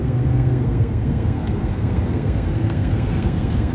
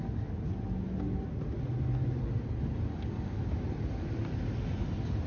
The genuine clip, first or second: second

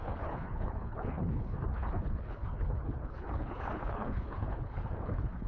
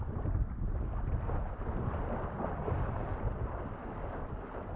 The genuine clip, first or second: second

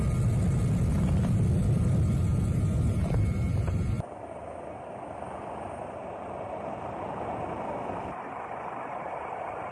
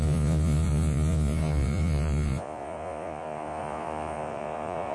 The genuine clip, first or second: first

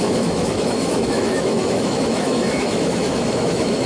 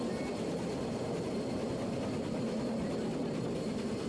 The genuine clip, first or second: second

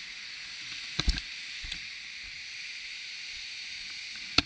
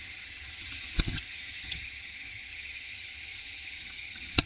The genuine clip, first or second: first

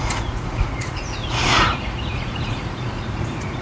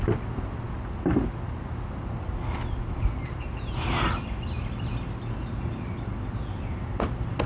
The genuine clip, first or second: second